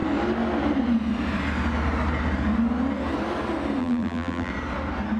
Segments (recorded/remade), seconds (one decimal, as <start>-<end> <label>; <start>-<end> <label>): 0.0-3.8 recorded; 3.8-4.5 remade; 4.5-5.2 recorded